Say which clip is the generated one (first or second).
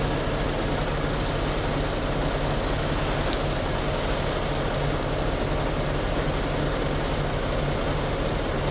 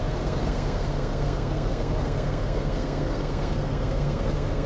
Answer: second